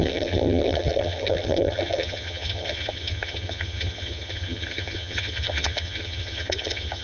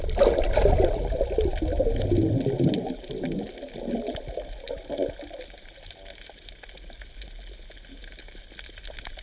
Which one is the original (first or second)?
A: second